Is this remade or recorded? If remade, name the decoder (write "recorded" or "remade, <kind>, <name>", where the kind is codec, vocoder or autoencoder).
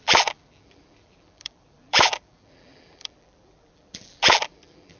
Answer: remade, vocoder, BigVGAN v2